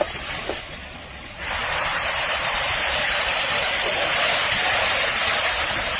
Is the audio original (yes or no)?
yes